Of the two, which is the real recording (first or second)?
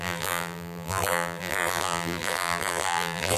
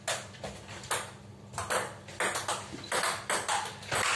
second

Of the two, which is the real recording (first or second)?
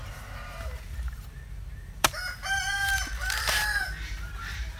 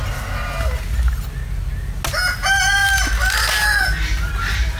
second